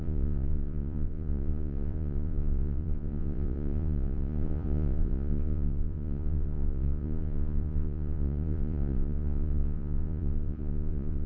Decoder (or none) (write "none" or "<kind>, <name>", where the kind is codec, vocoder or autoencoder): vocoder, Vocos